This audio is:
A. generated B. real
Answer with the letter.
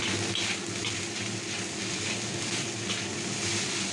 B